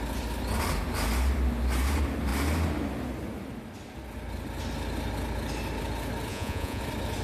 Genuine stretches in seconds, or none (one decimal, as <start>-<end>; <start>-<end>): 0.0-6.3; 6.8-7.2